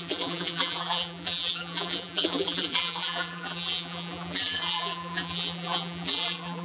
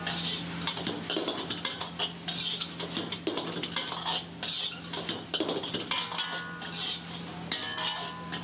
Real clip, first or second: second